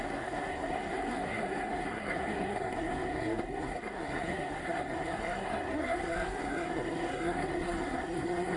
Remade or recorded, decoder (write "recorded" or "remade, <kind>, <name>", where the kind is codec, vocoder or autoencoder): remade, codec, SNAC